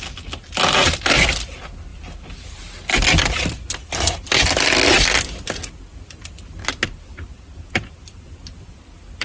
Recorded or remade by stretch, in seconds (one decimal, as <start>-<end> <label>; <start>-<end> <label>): 0.0-6.6 recorded; 6.6-8.3 remade; 8.3-9.2 recorded